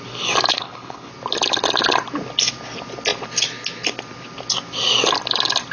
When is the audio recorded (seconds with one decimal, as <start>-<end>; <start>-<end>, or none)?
0.0-0.5; 1.1-5.7